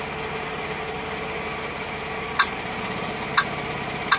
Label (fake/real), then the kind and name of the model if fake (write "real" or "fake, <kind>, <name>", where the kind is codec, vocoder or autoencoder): real